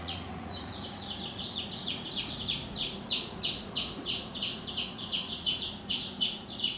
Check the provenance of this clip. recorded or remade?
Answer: remade